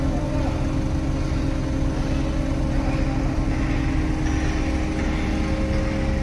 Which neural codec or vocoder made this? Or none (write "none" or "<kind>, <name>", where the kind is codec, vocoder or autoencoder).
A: none